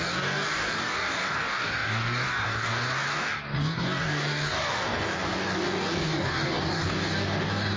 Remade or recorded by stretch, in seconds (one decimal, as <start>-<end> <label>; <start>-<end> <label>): 0.0-7.8 remade